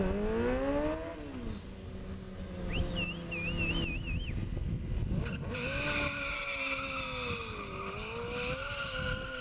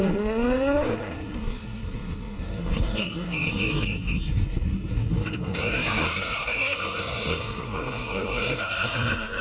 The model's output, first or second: second